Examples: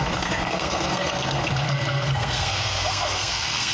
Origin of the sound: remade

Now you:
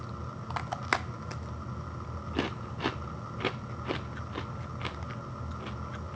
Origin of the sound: recorded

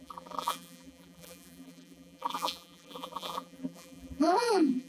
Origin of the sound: remade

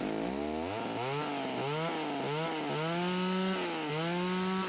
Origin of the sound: recorded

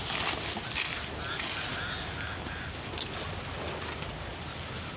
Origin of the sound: recorded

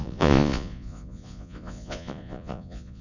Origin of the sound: remade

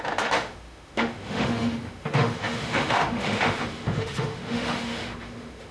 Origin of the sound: remade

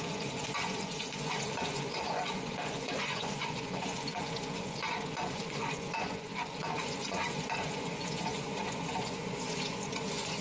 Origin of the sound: remade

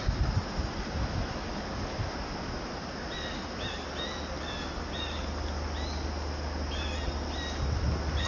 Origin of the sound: recorded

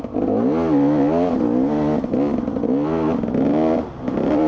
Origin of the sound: recorded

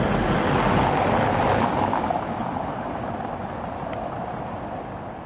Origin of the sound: recorded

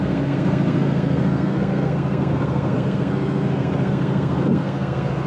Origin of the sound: remade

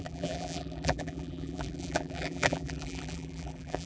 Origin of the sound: remade